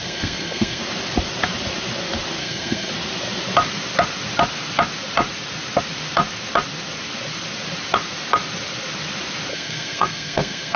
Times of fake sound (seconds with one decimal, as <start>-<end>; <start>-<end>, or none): 0.0-0.8; 2.4-2.9; 9.5-10.8